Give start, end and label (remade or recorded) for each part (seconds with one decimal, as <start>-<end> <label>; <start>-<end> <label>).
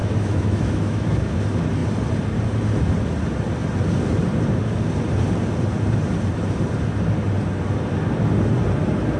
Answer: 0.0-1.4 remade; 1.4-9.2 recorded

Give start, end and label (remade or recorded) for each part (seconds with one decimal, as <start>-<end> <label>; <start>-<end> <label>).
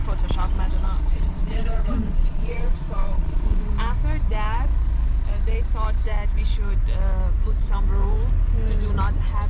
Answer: 0.0-1.1 recorded; 1.1-3.7 remade; 3.7-9.5 recorded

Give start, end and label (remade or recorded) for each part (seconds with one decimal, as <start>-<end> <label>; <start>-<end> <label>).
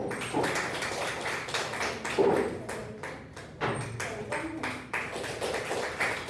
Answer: 0.0-6.3 recorded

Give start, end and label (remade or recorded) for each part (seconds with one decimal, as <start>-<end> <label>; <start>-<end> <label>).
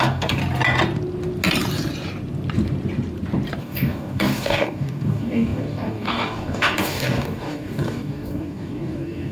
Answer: 0.0-0.4 remade; 0.4-3.6 recorded; 3.6-9.3 remade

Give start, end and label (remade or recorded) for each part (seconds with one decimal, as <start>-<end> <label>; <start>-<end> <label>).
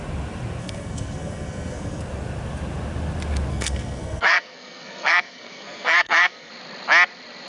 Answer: 0.0-0.6 recorded; 0.6-2.0 remade; 2.0-3.5 recorded; 3.5-6.5 remade; 6.5-7.5 recorded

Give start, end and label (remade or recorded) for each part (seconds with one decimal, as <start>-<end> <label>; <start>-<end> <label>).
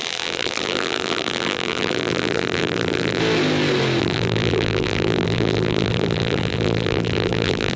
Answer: 0.0-3.2 remade; 3.2-4.0 recorded; 4.0-7.8 remade